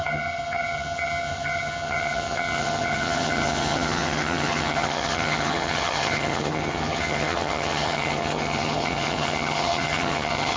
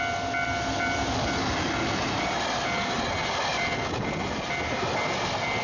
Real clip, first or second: second